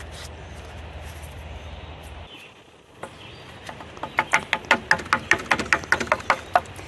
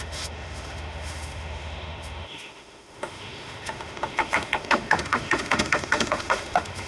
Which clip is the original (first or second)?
first